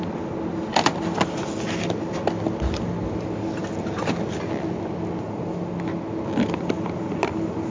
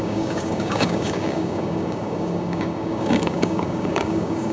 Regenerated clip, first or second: second